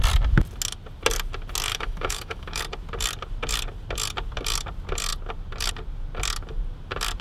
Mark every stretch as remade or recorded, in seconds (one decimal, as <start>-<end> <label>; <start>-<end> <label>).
0.0-1.7 recorded; 1.7-2.6 remade; 2.6-7.2 recorded